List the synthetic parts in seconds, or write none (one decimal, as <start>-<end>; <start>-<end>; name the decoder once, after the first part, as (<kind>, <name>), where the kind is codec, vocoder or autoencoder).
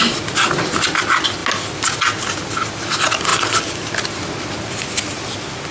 none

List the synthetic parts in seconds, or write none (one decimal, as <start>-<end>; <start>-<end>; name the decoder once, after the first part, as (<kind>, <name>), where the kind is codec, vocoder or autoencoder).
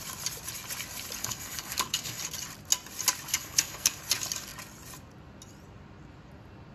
1.2-2.2 (codec, SNAC); 3.3-4.0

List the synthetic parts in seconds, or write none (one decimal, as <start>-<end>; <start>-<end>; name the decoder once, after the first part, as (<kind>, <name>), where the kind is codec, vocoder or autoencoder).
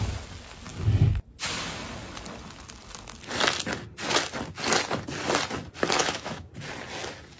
6.0-6.5 (autoencoder, DAC-VAE)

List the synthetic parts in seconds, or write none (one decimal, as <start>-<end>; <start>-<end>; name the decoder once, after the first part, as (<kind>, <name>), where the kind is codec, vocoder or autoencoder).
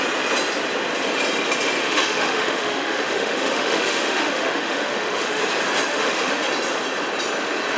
1.8-5.4 (autoencoder, DAC-VAE); 5.9-6.4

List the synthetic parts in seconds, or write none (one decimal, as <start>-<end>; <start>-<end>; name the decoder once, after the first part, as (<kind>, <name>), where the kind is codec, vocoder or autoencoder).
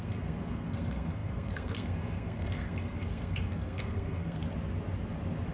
0.0-4.4 (codec, SNAC)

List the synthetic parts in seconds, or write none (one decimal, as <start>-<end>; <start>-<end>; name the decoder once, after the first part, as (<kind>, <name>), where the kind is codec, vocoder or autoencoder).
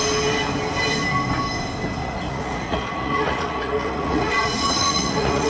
2.0-5.5 (vocoder, Vocos)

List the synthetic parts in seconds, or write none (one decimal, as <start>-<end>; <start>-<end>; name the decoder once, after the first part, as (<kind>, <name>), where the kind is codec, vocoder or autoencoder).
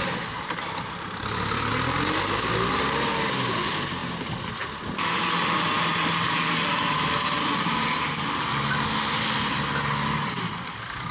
none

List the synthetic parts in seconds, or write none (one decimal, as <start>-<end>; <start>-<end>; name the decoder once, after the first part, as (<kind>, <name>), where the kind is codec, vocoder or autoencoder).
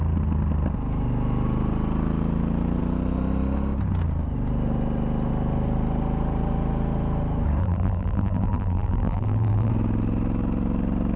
7.6-9.7 (vocoder, BigVGAN v2)